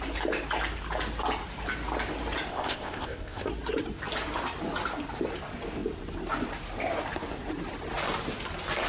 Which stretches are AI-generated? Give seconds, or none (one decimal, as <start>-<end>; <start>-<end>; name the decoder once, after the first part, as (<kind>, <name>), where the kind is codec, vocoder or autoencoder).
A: 2.5-3.5 (codec, ZipCodec)